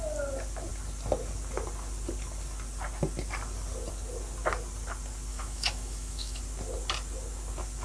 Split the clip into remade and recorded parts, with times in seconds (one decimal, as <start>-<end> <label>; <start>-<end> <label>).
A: 0.0-5.3 recorded; 5.3-6.4 remade; 6.4-7.8 recorded